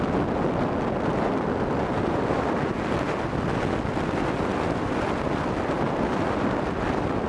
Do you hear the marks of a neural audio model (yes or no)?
no